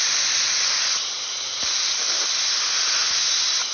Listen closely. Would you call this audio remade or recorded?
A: recorded